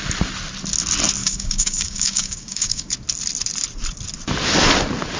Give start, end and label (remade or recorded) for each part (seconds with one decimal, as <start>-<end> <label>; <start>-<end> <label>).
0.0-1.2 recorded; 1.2-2.9 remade; 2.9-5.2 recorded